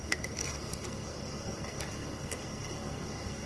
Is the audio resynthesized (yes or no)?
yes